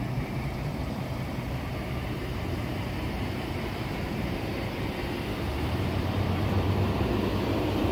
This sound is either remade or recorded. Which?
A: remade